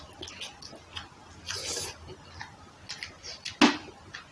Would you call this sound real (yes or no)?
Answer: yes